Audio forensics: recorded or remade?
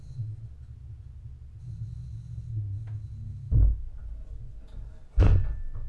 recorded